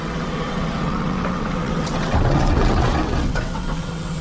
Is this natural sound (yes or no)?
no